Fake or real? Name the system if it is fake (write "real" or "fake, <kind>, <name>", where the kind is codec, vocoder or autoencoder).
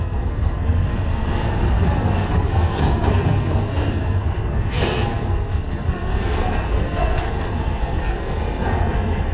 fake, codec, SNAC